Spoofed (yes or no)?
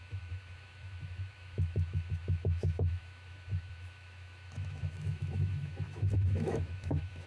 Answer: yes